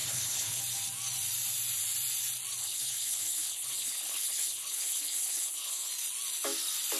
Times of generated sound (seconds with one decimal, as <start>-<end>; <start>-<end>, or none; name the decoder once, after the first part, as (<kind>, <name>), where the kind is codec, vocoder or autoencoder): 0.0-0.6 (codec, HILCodec); 2.6-5.9